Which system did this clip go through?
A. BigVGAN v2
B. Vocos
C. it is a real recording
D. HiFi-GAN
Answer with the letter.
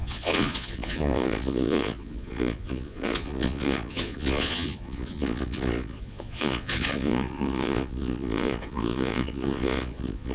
B